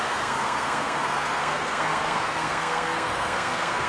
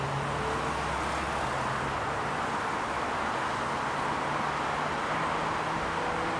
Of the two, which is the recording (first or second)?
second